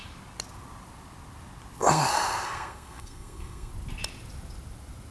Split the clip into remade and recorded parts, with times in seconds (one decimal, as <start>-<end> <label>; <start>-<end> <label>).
0.0-1.8 recorded; 1.8-3.7 remade; 3.7-5.1 recorded